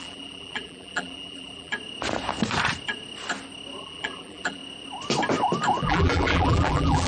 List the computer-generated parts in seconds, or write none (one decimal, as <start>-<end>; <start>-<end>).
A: 0.0-1.7; 3.8-4.6; 5.8-7.1